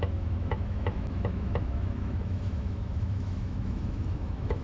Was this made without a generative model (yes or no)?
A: no